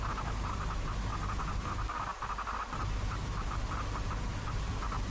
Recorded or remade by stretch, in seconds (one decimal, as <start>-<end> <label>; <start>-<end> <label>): 0.0-5.1 recorded